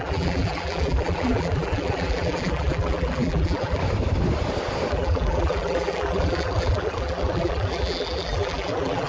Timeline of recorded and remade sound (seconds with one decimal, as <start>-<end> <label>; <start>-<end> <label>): 0.0-3.8 remade; 3.8-4.9 recorded; 4.9-9.1 remade